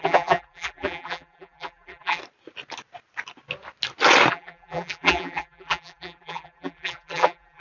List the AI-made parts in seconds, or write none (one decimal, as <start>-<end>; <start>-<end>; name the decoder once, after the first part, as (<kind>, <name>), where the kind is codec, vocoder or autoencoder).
0.0-2.2 (vocoder, BigVGAN v2); 4.3-7.6